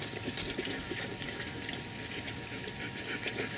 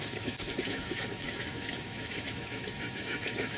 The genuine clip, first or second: first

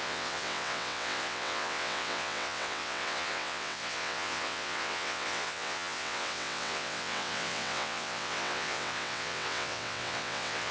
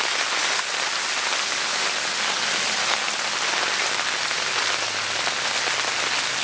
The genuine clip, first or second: second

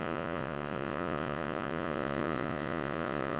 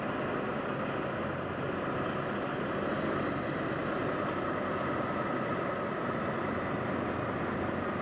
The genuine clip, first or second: second